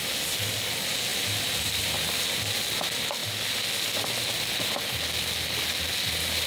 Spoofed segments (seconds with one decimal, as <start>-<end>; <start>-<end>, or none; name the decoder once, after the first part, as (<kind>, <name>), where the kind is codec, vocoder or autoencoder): none